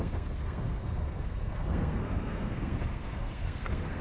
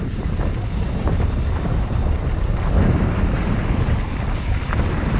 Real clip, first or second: second